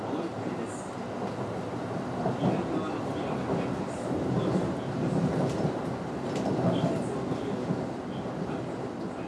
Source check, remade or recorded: recorded